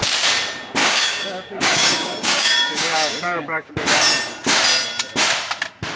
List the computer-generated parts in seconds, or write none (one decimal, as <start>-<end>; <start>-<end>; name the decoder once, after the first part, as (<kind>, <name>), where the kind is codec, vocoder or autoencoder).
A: 0.8-3.7 (codec, DAC)